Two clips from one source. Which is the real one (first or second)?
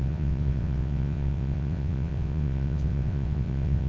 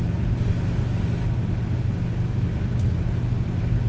second